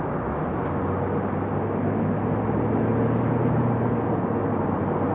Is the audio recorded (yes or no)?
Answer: yes